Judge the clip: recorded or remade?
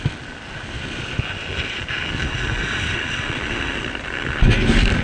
recorded